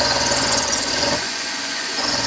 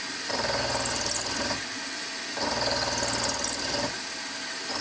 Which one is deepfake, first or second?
first